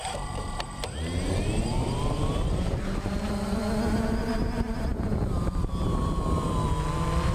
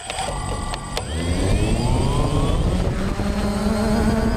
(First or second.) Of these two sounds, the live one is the second